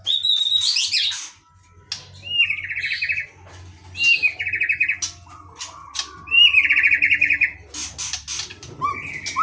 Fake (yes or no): no